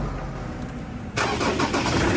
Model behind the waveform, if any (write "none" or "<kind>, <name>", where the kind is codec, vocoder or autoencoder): none